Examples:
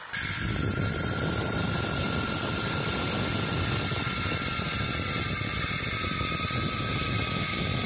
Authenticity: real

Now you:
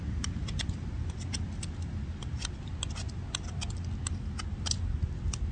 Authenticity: real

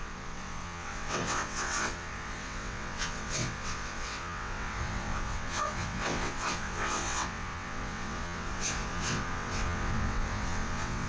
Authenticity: fake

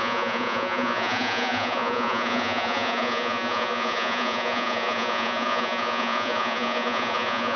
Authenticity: fake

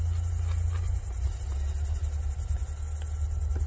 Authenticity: real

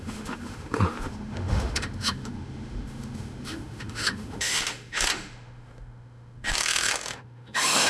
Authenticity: fake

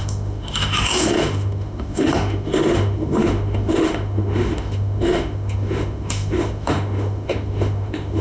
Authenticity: fake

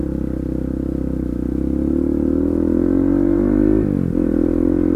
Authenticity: real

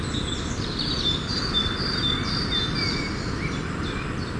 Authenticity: real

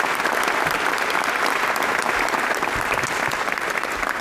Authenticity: real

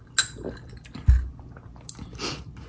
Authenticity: real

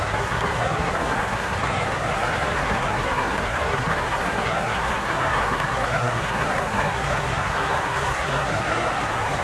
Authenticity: fake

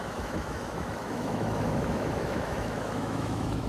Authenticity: fake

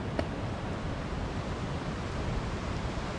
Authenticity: real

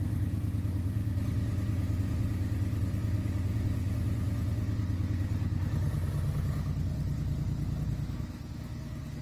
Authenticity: real